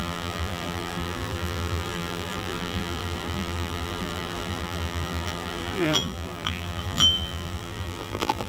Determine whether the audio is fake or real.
fake